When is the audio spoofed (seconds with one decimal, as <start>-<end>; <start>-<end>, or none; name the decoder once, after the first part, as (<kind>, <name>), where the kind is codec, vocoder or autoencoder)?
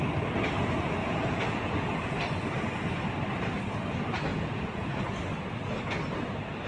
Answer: 1.0-2.2 (vocoder, Vocos); 4.3-5.0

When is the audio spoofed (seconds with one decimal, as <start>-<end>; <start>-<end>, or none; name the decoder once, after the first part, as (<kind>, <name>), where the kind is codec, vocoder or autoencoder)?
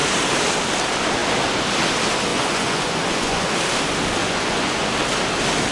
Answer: 2.3-3.5 (vocoder, Vocos); 4.2-4.9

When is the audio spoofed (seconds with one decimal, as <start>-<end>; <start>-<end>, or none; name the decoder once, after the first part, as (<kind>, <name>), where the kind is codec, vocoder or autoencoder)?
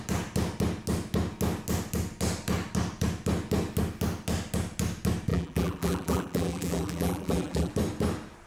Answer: 5.3-7.7 (vocoder, BigVGAN v2)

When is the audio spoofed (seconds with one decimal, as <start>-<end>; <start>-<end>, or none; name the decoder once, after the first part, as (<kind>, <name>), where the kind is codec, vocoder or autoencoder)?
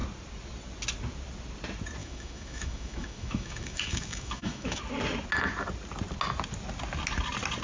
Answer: 2.0-4.8 (autoencoder, DAC-VAE)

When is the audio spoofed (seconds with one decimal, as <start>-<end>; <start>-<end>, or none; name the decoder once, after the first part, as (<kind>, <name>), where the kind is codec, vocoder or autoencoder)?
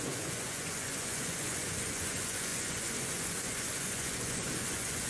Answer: 0.0-5.1 (vocoder, Vocos)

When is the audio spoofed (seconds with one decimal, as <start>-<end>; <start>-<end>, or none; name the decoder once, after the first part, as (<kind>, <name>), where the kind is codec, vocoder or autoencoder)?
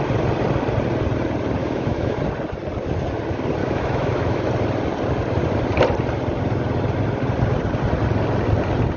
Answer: 1.6-2.2 (autoencoder, DAC-VAE); 3.6-4.5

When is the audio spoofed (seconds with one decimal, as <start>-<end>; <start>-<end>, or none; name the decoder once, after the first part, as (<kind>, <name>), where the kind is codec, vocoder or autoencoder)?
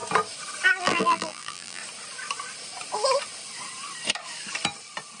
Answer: 0.8-1.8 (vocoder, BigVGAN v2)